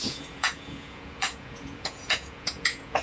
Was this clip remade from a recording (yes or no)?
yes